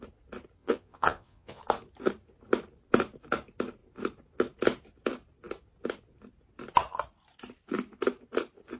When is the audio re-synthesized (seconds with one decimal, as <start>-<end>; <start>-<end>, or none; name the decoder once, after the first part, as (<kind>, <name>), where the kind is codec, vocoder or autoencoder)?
0.6-1.6 (vocoder, Vocos)